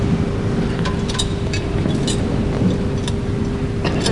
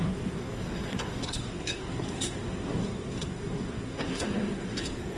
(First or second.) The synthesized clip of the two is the second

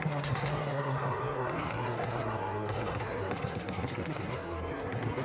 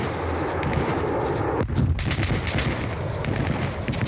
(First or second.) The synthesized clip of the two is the first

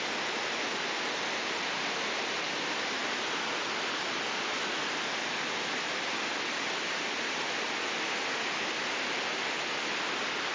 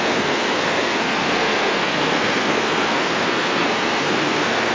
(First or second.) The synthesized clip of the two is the second